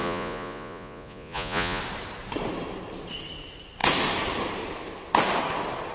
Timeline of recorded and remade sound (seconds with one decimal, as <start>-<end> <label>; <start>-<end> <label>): 0.0-1.8 remade; 1.8-5.9 recorded